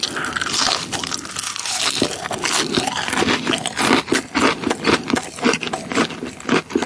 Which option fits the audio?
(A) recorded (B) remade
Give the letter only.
A